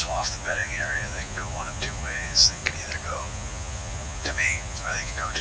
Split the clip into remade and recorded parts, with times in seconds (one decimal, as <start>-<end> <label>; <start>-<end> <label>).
0.0-2.6 remade; 2.6-3.2 recorded; 3.2-5.4 remade